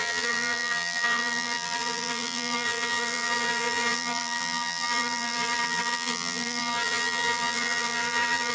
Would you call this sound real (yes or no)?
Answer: no